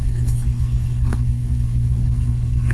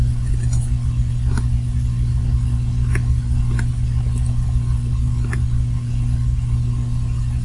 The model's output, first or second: first